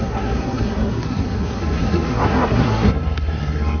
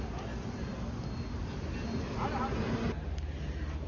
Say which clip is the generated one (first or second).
first